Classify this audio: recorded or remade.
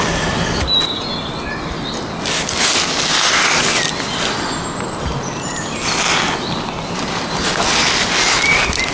recorded